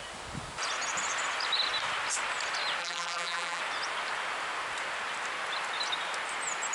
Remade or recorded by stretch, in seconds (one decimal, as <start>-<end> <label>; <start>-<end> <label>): 0.0-2.8 recorded; 2.8-3.6 remade; 3.6-6.7 recorded